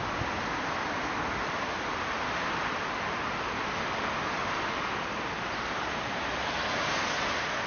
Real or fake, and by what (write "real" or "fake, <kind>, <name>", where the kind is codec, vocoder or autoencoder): real